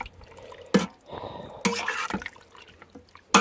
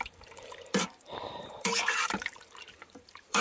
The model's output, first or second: second